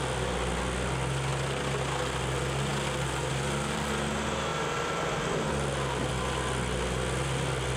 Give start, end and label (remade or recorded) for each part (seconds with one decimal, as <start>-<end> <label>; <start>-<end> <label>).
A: 0.0-7.8 recorded